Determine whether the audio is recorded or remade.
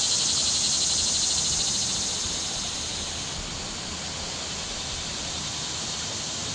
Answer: recorded